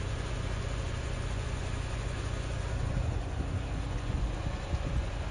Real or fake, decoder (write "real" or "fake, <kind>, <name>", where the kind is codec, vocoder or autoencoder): fake, vocoder, Vocos